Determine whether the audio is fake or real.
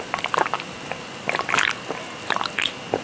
real